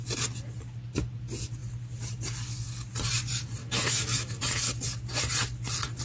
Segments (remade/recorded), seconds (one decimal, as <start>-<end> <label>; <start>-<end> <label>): 0.0-3.6 recorded; 3.6-4.4 remade; 4.4-6.0 recorded